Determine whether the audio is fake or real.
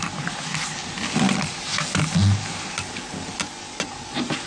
real